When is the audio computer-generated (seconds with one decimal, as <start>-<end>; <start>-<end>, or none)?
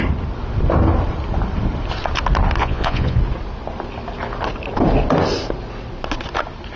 2.6-3.2